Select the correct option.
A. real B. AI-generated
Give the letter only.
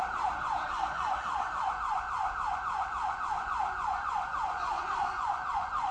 B